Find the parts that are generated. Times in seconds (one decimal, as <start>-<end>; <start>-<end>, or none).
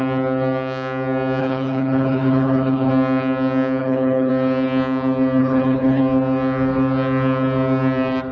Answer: 1.4-2.9; 3.8-4.3; 5.4-6.0